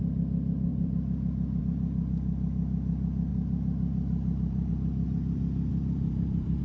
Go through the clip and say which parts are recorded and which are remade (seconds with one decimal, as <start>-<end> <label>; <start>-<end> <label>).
0.0-0.7 recorded; 0.7-1.6 remade; 1.6-3.3 recorded; 3.3-4.7 remade; 4.7-5.7 recorded; 5.7-6.6 remade